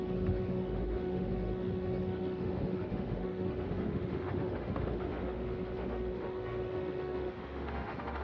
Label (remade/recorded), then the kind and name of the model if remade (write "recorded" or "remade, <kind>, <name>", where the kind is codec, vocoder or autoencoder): remade, autoencoder, DAC-VAE